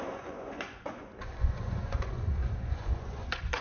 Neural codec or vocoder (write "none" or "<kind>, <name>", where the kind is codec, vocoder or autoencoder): vocoder, Vocos